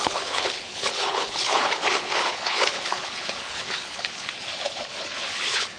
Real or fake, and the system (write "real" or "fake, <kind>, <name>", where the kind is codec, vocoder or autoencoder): fake, codec, HILCodec